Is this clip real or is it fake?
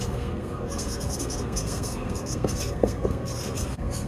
fake